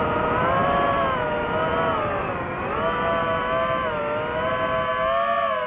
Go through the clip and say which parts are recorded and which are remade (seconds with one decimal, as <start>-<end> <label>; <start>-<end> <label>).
0.0-5.7 recorded